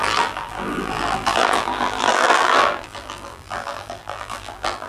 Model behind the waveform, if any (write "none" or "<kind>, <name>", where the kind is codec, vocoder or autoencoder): vocoder, BigVGAN v2